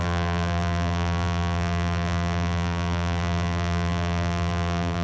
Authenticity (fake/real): fake